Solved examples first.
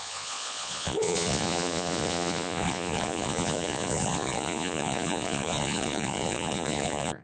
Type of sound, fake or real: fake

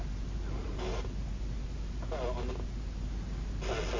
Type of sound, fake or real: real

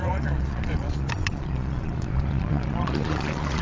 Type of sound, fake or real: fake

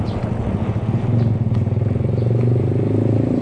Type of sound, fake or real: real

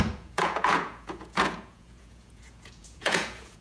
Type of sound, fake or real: fake